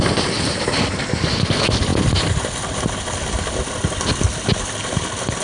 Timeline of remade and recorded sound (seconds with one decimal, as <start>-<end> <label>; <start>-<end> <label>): 0.0-5.4 recorded